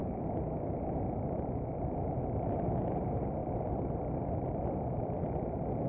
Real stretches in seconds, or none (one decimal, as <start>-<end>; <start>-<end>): 0.0-3.4; 4.2-5.9